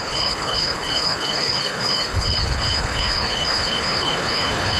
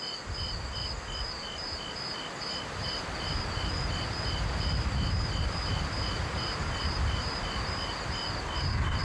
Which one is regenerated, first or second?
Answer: first